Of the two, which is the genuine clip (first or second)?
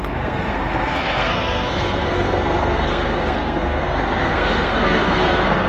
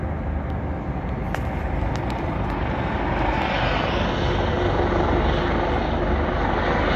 second